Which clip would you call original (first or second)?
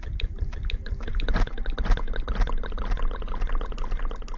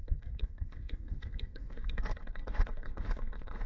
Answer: first